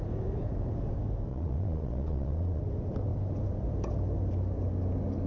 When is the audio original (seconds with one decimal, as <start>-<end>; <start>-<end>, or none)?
0.0-1.3; 2.6-5.3